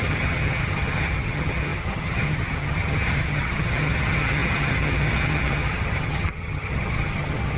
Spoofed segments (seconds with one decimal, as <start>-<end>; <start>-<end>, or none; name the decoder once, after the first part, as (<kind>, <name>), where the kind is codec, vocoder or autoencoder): 0.0-7.6 (vocoder, HiFi-GAN)